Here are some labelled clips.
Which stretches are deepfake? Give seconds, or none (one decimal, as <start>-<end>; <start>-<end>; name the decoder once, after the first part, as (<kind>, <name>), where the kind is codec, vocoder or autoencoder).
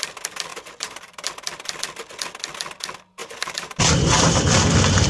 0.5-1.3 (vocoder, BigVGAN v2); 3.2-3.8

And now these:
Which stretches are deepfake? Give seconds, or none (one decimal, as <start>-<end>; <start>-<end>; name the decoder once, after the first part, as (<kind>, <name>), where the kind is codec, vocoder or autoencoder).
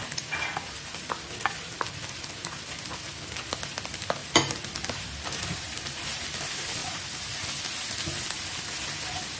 6.8-7.6 (vocoder, BigVGAN v2)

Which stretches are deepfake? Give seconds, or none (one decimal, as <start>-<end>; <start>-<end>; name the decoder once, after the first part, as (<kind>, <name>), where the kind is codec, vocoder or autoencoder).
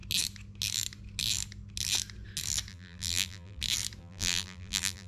2.7-3.6 (vocoder, BigVGAN v2); 4.0-5.1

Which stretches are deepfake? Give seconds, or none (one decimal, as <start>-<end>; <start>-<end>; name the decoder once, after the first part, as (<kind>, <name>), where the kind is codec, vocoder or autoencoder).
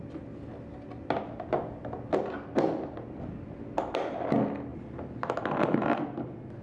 none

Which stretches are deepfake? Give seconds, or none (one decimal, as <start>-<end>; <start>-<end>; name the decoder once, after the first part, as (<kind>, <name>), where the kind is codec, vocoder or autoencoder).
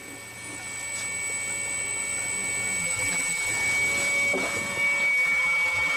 2.8-3.5 (vocoder, BigVGAN v2); 5.1-6.0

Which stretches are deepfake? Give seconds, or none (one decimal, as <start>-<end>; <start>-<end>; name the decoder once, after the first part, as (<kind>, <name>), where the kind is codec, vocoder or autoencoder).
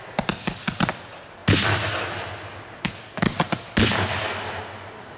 none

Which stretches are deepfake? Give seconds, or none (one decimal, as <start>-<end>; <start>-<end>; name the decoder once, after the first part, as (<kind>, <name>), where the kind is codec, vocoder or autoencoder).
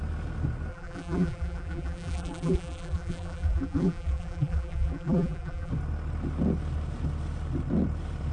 0.7-5.7 (vocoder, BigVGAN v2)